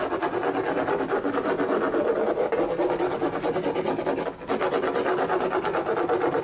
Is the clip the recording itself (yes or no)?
yes